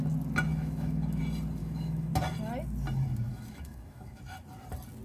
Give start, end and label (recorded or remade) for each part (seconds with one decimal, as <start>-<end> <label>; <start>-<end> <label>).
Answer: 0.0-0.5 recorded; 0.5-1.2 remade; 1.2-1.6 recorded; 1.6-2.1 remade; 2.1-3.3 recorded; 3.3-4.2 remade; 4.2-5.0 recorded